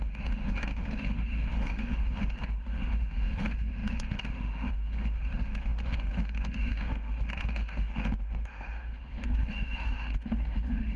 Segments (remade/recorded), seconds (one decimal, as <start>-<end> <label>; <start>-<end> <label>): 0.0-11.0 remade